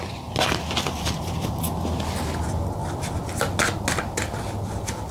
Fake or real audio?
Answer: real